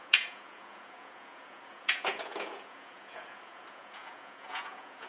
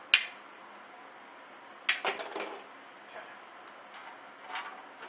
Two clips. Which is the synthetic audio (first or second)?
first